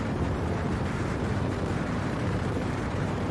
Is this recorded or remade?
remade